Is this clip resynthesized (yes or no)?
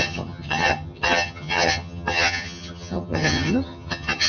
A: yes